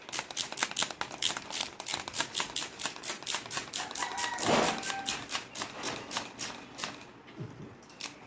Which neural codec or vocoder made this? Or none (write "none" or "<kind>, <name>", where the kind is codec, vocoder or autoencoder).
none